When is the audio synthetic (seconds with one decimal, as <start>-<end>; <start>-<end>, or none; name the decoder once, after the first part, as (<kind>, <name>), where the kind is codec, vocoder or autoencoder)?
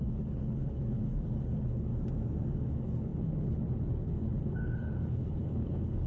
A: 0.0-1.9 (codec, HILCodec); 2.7-6.1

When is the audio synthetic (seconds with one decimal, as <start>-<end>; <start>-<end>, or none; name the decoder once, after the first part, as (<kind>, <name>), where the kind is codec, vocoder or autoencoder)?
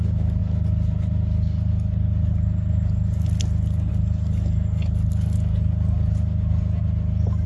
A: none